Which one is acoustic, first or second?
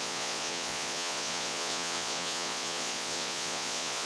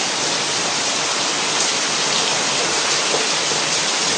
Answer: second